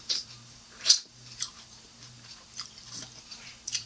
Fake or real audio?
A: fake